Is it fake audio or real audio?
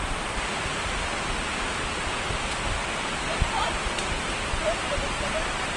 real